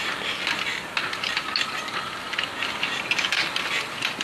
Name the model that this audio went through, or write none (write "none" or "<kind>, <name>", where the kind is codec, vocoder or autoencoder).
none